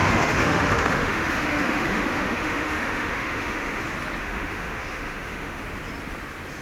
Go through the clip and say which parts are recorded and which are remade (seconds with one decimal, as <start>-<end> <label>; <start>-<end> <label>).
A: 0.0-3.8 remade; 3.8-4.2 recorded; 4.2-5.6 remade; 5.6-6.6 recorded